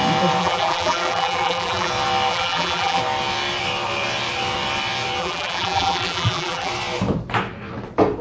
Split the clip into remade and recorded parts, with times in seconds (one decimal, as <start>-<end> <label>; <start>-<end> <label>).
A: 0.0-0.4 recorded; 0.4-1.9 remade; 1.9-2.3 recorded; 2.3-3.0 remade; 3.0-5.2 recorded; 5.2-6.7 remade; 6.7-8.2 recorded